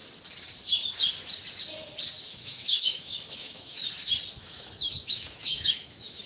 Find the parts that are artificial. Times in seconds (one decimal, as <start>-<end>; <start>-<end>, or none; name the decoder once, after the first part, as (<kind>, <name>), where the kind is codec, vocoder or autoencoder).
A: 2.4-3.8 (autoencoder, DAC-VAE); 4.4-6.3